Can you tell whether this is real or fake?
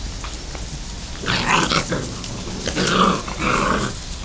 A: real